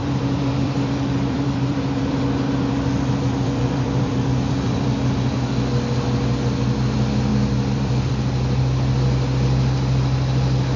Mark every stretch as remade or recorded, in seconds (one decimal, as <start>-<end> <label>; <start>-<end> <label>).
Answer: 0.0-5.1 remade; 5.1-7.3 recorded; 7.3-8.1 remade; 8.1-10.8 recorded